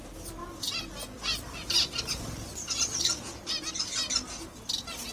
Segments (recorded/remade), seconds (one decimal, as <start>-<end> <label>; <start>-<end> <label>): 0.0-5.1 recorded